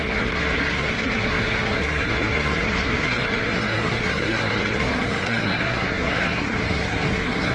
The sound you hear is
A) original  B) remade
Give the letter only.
B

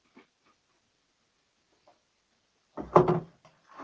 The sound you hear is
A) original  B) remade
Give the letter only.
A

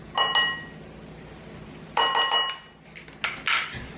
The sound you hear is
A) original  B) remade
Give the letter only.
A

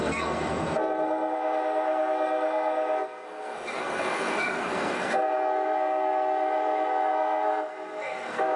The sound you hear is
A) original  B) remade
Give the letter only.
B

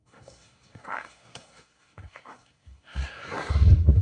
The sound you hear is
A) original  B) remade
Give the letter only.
B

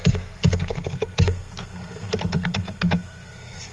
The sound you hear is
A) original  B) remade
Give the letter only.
B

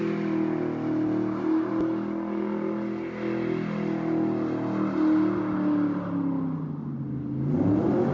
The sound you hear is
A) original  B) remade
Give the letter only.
A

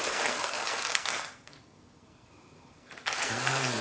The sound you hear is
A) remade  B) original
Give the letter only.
A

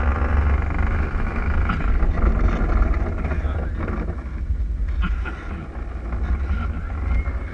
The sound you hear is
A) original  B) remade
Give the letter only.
A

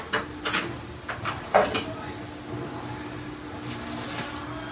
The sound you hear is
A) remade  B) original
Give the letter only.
B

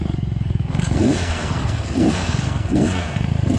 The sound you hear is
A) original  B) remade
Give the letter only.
B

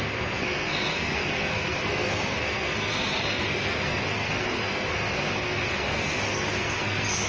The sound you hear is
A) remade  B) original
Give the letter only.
A